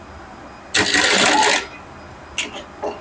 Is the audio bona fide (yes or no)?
yes